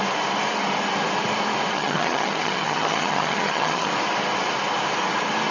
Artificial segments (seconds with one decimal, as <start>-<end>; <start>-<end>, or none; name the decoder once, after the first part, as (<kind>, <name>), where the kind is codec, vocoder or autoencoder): 1.7-3.9 (vocoder, HiFi-GAN)

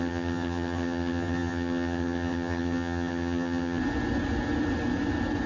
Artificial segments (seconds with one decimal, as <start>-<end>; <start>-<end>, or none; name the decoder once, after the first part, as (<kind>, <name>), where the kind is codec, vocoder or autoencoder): 0.0-3.8 (vocoder, HiFi-GAN)

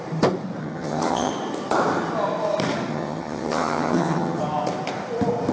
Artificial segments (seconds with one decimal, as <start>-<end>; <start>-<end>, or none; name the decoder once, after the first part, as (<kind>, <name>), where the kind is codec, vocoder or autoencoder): 0.6-1.3 (vocoder, HiFi-GAN); 2.9-4.4